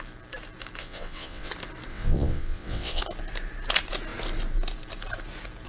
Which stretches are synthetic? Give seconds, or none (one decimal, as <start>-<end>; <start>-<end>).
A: 0.8-1.5; 1.9-3.0